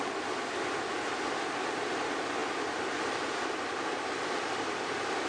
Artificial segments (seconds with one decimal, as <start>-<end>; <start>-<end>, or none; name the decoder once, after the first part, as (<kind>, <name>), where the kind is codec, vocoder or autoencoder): 0.0-2.4 (vocoder, BigVGAN v2); 4.2-5.3